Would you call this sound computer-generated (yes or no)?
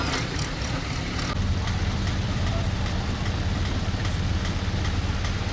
yes